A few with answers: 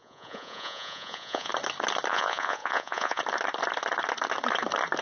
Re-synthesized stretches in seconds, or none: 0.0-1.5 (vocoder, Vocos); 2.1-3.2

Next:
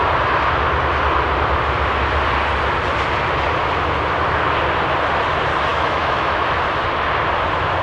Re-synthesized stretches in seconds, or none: 5.7-6.6 (autoencoder, DAC-VAE)

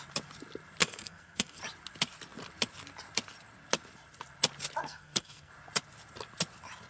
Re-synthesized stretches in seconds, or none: 0.8-1.6 (codec, SNAC); 4.8-5.5